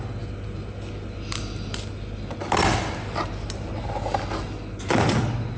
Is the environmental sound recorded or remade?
recorded